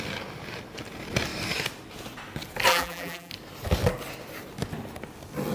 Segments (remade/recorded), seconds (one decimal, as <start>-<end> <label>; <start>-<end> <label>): 0.0-2.7 recorded; 2.7-3.3 remade; 3.3-5.5 recorded